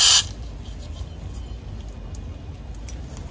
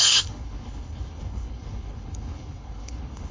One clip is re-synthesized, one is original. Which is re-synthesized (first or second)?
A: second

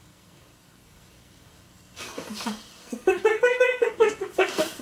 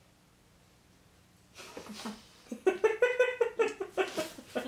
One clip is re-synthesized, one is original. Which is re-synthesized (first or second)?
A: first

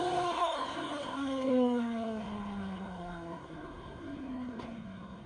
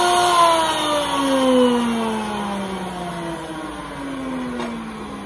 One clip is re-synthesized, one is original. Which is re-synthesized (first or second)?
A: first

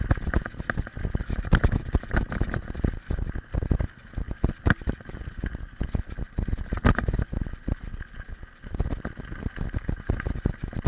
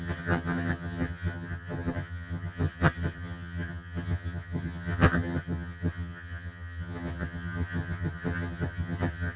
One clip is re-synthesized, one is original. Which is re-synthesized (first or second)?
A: second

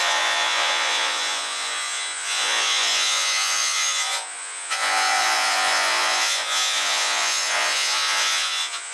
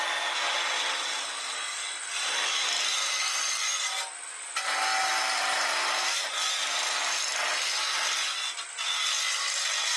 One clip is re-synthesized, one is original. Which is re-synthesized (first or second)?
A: first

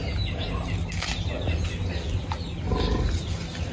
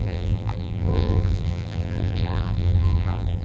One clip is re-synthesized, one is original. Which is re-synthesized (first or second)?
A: second